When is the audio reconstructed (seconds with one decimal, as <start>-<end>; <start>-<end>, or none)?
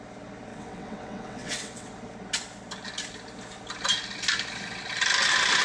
0.5-1.9